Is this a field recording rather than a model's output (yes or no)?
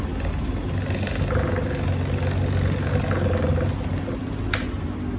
yes